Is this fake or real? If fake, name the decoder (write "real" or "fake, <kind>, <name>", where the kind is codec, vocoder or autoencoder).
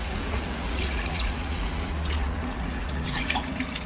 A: fake, vocoder, Vocos